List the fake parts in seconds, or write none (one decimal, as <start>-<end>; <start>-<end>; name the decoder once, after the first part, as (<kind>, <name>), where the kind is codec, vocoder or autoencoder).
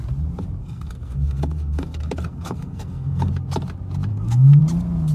0.6-3.3 (codec, SNAC); 4.1-4.6